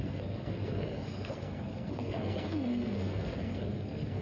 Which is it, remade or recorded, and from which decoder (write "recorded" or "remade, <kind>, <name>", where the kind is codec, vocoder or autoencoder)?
remade, codec, SNAC